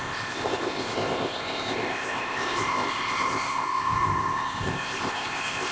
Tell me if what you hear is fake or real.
fake